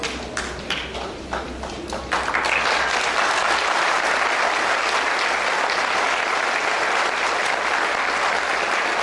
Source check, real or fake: real